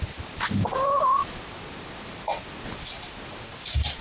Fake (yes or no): no